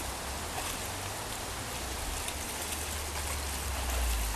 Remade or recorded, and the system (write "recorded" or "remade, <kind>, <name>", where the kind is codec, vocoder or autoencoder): recorded